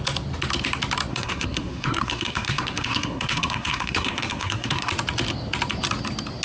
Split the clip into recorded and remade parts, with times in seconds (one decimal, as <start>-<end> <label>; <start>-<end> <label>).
0.0-1.1 recorded; 1.1-4.9 remade; 4.9-6.4 recorded